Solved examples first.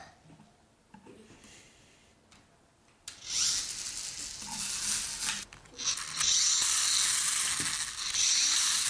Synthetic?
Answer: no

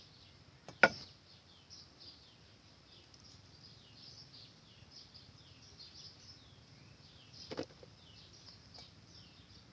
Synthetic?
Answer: no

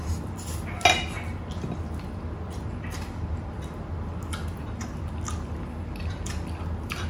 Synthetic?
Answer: no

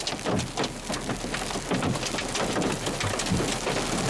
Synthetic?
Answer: no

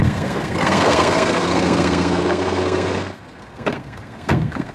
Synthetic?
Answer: yes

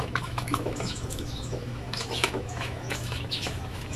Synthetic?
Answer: yes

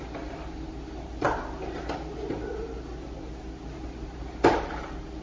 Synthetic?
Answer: no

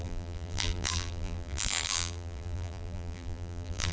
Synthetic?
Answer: yes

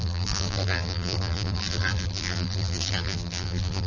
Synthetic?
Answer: yes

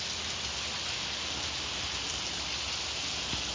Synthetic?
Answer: no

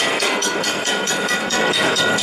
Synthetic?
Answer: yes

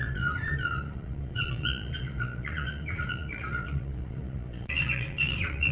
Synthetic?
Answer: yes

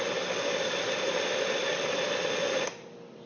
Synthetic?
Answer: no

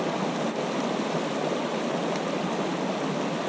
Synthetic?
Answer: no